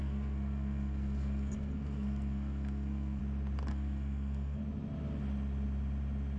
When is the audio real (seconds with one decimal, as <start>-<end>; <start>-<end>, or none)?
3.2-3.7; 4.6-6.4